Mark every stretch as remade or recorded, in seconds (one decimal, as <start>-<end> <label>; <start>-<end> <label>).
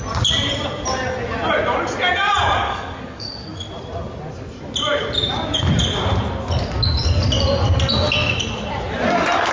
0.0-2.6 recorded; 2.6-3.5 remade; 3.5-9.5 recorded